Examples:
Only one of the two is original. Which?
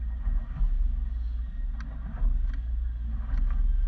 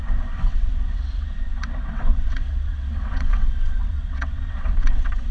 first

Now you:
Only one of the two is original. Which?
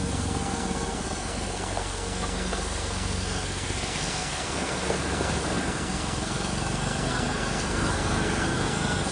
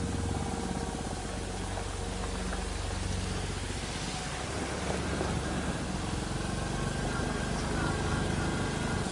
second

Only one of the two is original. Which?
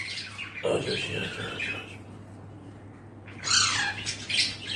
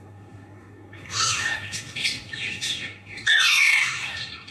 first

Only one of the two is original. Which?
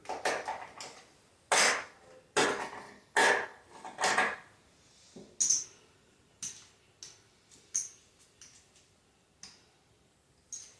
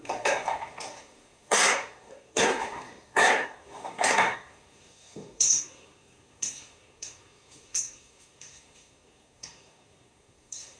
first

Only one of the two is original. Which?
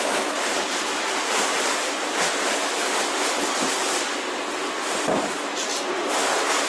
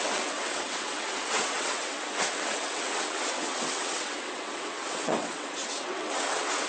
first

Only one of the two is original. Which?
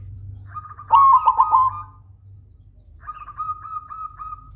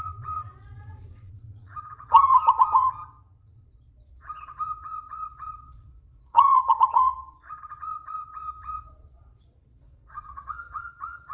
first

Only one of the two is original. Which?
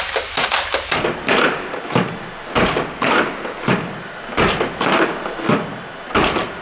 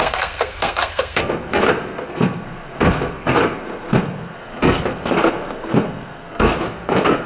first